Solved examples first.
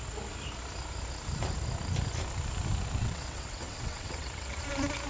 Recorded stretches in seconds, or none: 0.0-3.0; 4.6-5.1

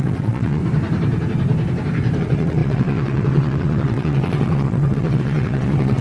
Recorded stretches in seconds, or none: 0.6-2.2

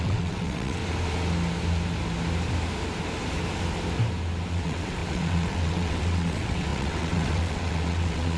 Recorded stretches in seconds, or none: 0.8-4.5

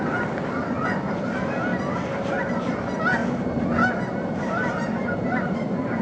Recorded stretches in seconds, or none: 0.0-6.0

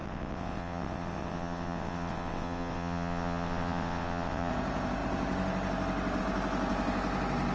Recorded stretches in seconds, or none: 4.5-7.5